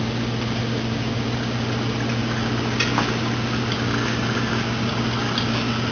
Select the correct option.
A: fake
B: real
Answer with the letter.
B